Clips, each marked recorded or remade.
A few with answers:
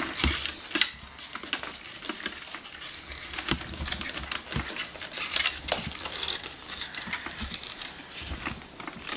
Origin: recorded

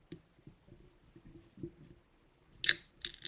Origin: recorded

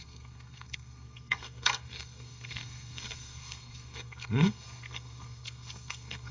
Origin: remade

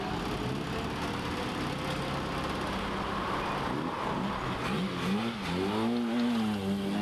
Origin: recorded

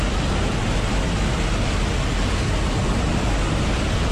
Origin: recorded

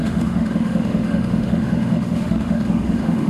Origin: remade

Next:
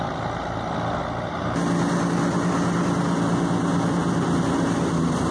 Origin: recorded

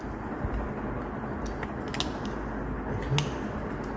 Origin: recorded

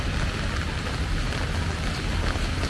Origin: recorded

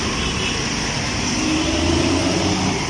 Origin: recorded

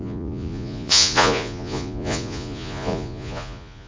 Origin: remade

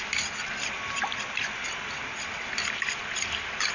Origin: recorded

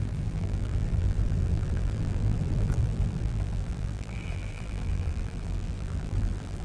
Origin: remade